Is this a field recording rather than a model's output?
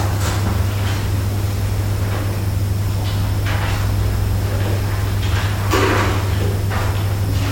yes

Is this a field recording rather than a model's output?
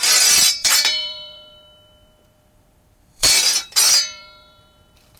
no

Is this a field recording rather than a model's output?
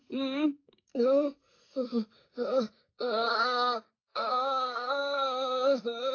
no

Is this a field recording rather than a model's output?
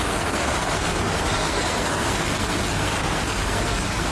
no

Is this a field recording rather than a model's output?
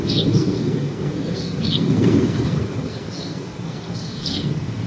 no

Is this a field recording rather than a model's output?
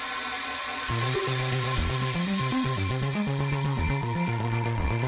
no